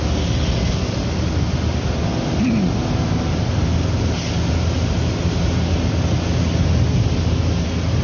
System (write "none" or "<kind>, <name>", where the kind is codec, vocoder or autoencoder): none